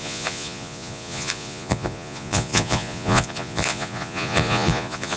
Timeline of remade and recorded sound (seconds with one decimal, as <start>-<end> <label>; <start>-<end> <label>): 0.0-5.2 remade